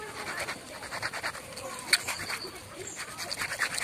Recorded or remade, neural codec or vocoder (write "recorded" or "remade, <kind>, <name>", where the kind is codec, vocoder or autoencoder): recorded